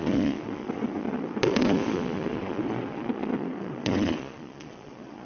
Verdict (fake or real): fake